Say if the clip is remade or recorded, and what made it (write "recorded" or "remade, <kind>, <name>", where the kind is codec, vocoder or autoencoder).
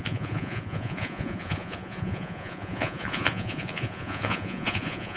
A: remade, vocoder, Vocos